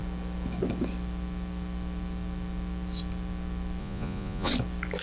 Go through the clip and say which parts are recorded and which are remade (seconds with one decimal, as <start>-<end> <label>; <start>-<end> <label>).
0.0-3.8 recorded; 3.8-4.5 remade; 4.5-5.0 recorded